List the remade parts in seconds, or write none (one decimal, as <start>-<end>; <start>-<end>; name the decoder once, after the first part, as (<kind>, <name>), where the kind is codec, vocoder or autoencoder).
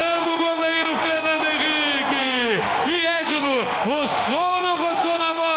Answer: 0.0-1.4 (autoencoder, DAC-VAE); 2.2-5.6